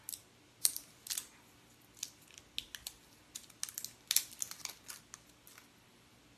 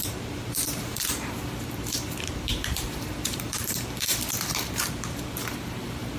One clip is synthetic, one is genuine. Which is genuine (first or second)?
first